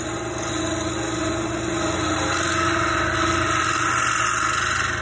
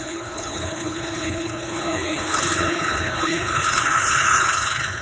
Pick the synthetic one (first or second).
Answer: second